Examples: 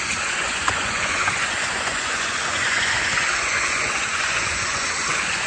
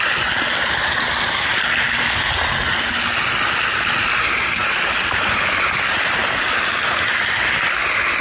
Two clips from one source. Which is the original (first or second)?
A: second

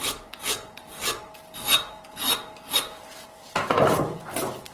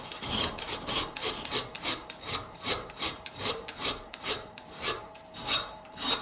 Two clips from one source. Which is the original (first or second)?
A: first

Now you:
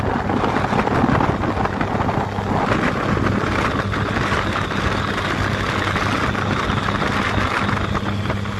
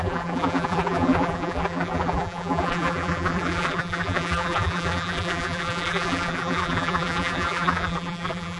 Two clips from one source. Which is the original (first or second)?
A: first